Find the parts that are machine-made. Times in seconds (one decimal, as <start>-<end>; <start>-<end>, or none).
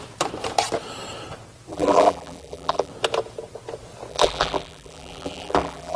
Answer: 1.7-2.9; 4.1-6.0